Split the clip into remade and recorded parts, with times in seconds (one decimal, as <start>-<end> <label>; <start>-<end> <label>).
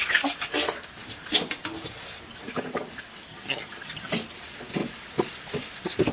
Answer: 0.0-3.3 recorded; 3.3-4.1 remade; 4.1-6.1 recorded